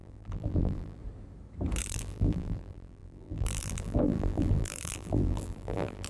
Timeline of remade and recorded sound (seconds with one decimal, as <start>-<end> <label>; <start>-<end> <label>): 0.0-1.0 remade; 1.0-1.8 recorded; 1.8-6.1 remade